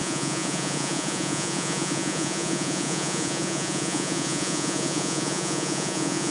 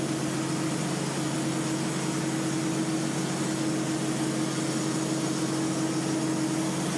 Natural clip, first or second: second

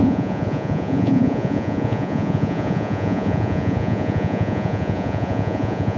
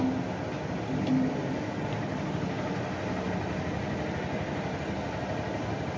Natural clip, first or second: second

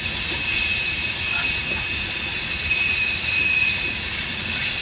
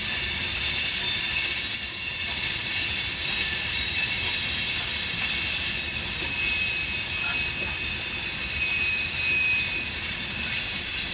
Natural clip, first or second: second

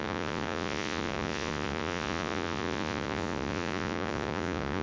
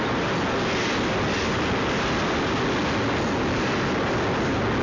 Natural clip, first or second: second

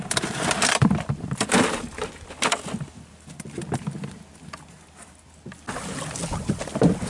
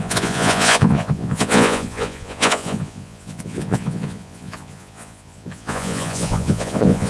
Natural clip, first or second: first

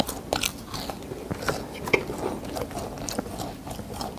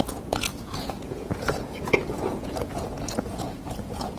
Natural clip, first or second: first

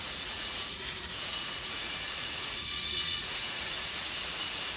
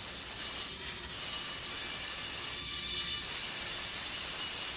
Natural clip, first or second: second